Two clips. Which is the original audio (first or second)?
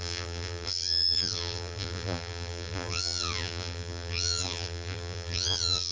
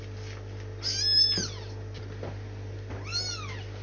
second